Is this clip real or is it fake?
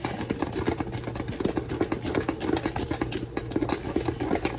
real